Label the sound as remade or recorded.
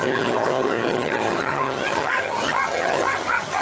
remade